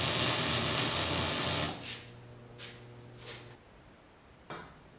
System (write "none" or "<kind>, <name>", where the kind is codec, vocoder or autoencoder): none